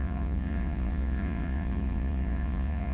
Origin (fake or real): fake